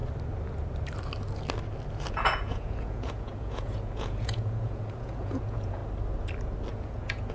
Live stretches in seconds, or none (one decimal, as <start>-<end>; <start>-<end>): 0.0-2.1; 5.8-6.7